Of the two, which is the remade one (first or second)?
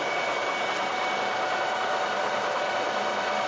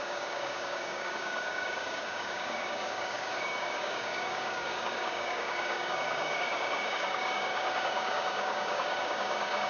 second